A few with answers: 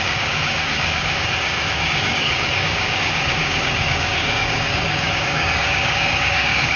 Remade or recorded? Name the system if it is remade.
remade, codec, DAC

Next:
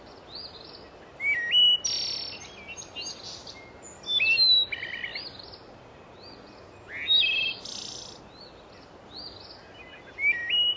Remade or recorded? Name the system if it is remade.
recorded